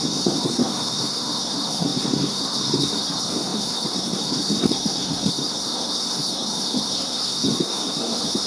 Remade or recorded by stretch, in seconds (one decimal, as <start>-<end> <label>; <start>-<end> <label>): 0.0-8.5 remade